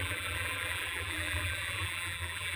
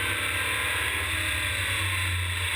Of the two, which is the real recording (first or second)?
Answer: second